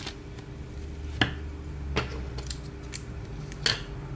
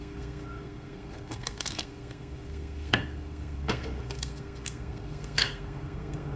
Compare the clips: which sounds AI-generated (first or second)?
second